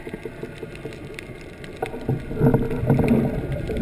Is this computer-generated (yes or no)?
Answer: no